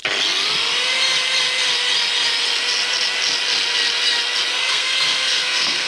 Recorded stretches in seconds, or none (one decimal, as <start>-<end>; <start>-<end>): 0.0-4.7